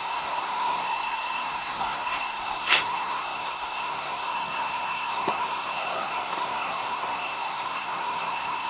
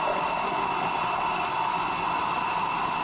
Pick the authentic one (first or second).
second